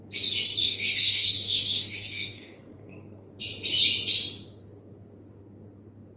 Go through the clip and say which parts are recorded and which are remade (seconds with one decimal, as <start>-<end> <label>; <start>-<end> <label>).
0.0-0.6 recorded; 0.6-3.3 remade; 3.3-6.2 recorded